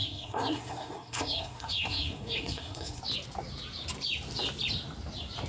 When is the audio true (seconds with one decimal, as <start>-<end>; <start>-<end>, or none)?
3.0-5.5